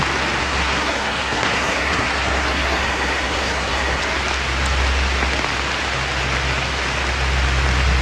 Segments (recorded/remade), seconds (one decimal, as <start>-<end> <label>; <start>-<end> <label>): 0.0-0.4 recorded; 0.4-4.0 remade; 4.0-8.0 recorded

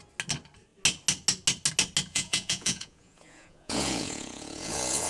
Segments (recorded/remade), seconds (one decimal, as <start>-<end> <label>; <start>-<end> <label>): 0.0-2.1 recorded; 2.1-5.1 remade